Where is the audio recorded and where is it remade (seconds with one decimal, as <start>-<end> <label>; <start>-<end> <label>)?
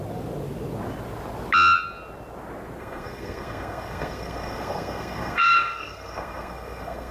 0.0-2.8 recorded; 2.8-7.1 remade